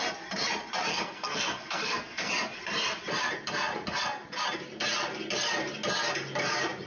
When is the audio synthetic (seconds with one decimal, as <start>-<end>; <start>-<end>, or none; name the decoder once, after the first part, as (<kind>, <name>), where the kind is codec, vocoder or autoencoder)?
0.9-2.3 (codec, SNAC)